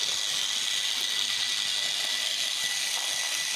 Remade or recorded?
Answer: recorded